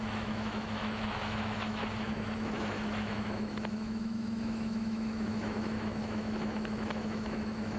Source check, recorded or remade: remade